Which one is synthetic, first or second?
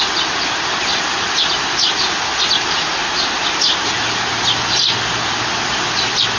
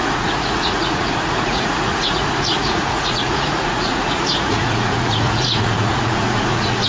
second